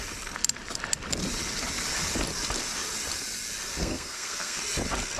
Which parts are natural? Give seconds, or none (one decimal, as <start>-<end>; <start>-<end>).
0.0-3.8; 4.6-5.2